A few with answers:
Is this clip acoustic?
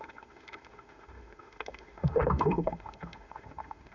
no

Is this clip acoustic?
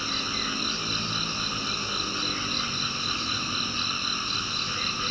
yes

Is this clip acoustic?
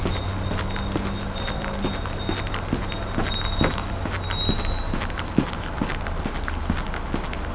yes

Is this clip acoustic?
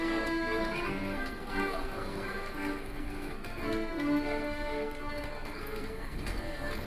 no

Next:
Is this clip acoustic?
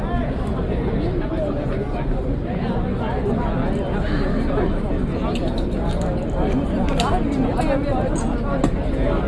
yes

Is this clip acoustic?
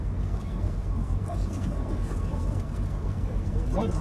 no